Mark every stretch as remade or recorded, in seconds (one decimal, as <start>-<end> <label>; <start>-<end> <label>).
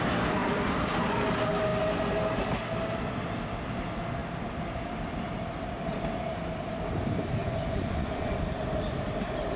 0.0-7.4 recorded; 7.4-8.4 remade; 8.4-9.6 recorded